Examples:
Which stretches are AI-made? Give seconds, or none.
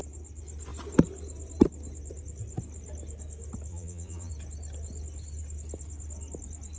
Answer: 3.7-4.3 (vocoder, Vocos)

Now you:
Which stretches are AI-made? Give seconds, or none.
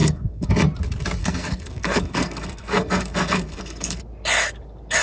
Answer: 0.0-0.5 (codec, SNAC); 1.2-4.0